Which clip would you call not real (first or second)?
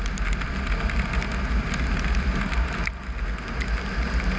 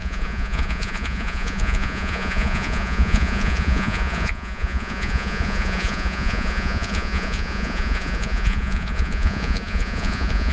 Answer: second